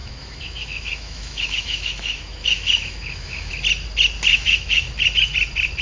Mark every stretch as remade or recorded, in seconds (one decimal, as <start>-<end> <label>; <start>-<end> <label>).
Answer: 0.0-3.5 remade; 3.5-4.3 recorded; 4.3-4.9 remade; 4.9-5.8 recorded